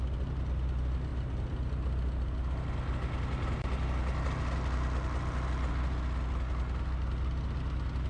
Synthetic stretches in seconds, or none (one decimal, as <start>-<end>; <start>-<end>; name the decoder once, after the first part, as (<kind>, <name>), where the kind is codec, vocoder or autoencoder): none